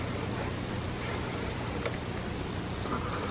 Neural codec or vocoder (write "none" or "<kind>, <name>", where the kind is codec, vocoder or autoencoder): none